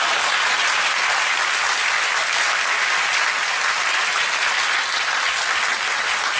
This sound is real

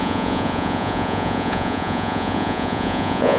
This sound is fake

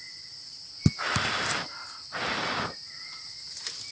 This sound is real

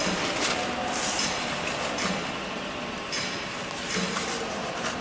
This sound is real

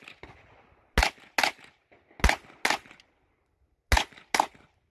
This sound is real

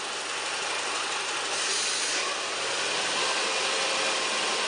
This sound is real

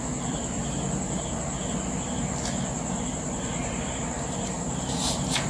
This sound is real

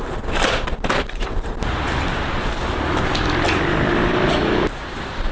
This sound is real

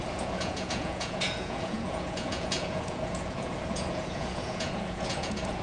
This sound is fake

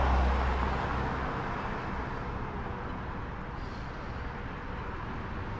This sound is real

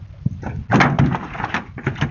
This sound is real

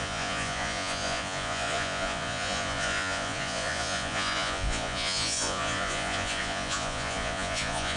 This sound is fake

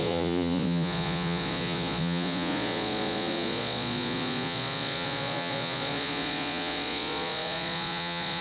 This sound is fake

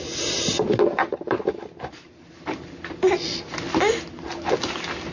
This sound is real